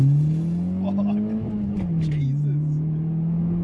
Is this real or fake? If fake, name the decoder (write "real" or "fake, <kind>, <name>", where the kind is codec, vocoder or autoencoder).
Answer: real